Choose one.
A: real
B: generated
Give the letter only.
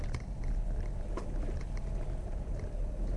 B